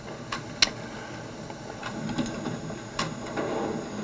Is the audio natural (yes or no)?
yes